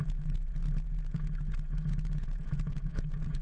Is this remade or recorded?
remade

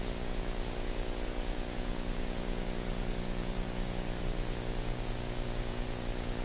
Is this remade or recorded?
remade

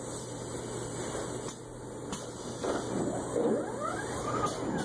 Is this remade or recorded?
recorded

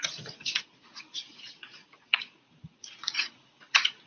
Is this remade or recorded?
remade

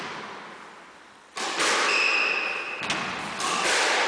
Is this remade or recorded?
recorded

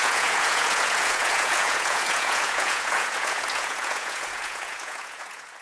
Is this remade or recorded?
remade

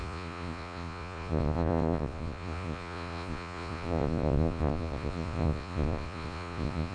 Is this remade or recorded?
remade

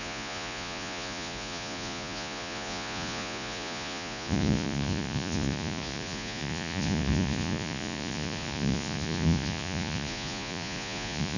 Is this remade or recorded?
remade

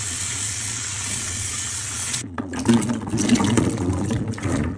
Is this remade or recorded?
remade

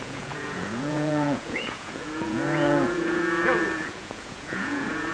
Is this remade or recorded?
remade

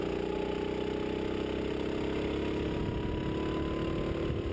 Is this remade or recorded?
recorded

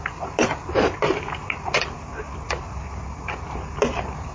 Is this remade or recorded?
recorded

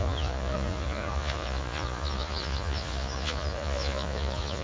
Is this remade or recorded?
remade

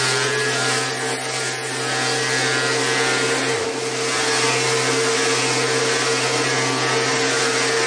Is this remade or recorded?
recorded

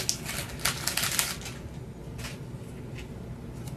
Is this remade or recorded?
recorded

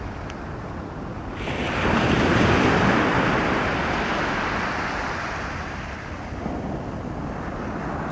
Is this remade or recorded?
recorded